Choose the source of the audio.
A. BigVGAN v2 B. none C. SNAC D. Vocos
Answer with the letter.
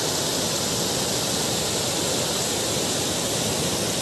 B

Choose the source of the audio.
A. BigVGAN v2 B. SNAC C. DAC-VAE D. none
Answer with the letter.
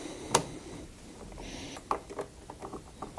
D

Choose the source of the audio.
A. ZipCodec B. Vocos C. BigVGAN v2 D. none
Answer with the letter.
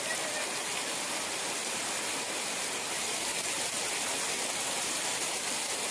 D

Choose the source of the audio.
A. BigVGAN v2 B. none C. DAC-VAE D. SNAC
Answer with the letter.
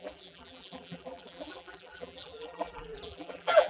A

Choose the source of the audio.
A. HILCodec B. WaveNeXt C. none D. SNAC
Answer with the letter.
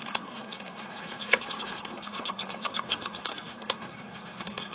D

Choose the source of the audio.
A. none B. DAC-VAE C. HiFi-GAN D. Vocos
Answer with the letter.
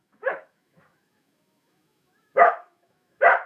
B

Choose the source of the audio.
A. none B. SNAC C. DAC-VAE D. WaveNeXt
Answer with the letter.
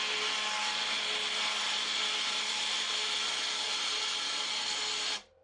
A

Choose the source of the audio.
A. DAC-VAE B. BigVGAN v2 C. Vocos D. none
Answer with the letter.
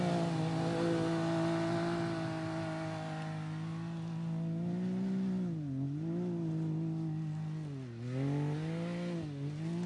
D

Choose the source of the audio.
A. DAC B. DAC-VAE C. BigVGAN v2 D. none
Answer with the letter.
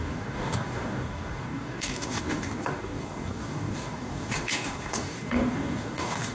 A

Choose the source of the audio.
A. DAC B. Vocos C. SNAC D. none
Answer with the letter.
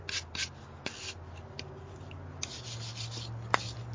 D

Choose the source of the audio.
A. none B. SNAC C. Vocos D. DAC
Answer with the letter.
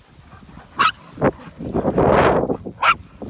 A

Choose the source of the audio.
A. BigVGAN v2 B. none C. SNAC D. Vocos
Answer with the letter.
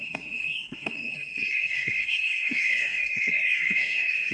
C